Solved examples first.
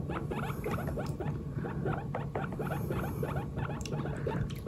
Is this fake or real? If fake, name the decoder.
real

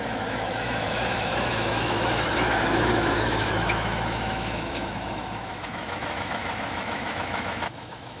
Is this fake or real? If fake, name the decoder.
fake, autoencoder, DAC-VAE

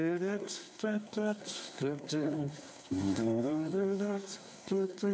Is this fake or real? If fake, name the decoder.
fake, codec, SNAC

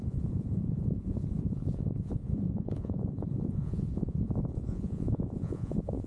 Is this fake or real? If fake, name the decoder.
fake, vocoder, Vocos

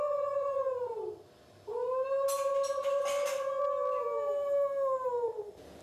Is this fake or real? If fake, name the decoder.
real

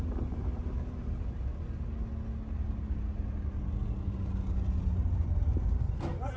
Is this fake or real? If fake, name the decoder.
real